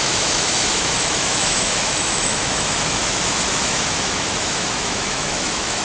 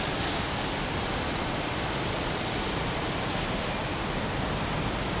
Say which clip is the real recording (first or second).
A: second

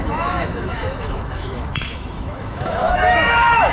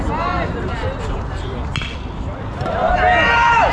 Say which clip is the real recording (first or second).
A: second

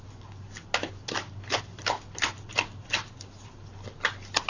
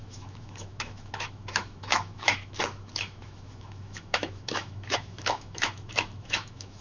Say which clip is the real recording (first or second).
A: first